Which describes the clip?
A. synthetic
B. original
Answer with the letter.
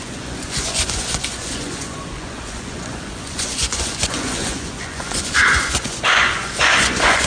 A